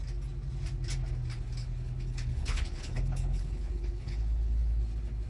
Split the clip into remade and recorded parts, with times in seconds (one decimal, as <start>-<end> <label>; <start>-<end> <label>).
0.0-1.6 recorded; 1.6-4.8 remade; 4.8-5.3 recorded